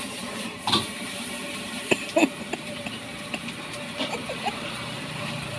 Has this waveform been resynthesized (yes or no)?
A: yes